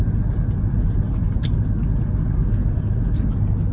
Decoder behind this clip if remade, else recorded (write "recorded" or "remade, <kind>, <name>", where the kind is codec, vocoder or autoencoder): recorded